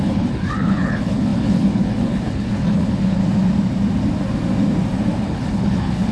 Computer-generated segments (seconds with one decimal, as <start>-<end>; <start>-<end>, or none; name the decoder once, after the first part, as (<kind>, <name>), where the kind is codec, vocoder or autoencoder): 0.0-3.2 (codec, HILCodec); 5.2-6.1